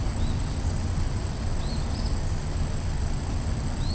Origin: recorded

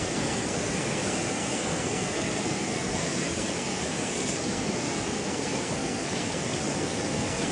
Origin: remade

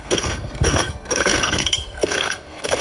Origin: remade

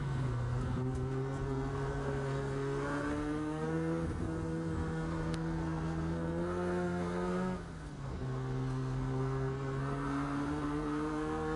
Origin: remade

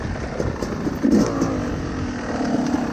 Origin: recorded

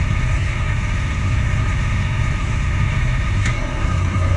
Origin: remade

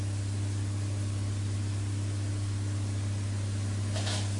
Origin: recorded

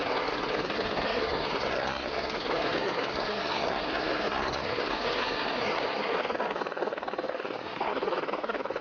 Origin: remade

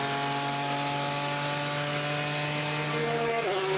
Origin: recorded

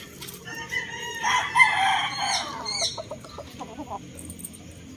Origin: recorded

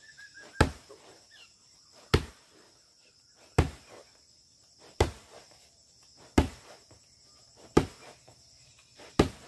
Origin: recorded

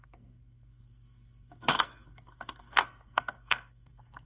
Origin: remade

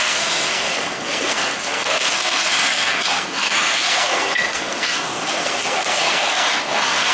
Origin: remade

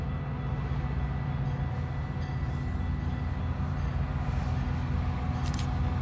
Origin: recorded